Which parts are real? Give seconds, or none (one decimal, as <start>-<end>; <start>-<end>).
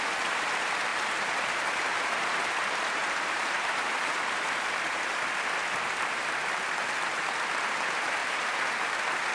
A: 0.0-0.9; 2.5-3.0; 4.2-8.2; 8.7-9.3